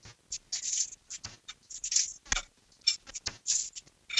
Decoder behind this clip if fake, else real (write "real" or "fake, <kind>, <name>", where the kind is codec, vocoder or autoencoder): real